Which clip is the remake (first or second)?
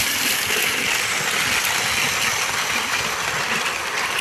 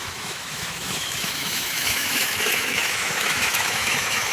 second